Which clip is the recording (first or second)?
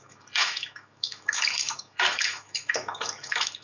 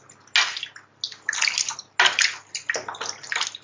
second